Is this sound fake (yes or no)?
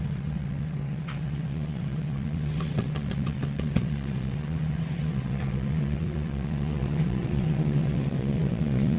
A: yes